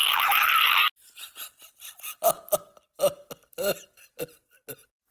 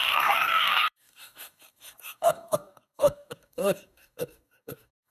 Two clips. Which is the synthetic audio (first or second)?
second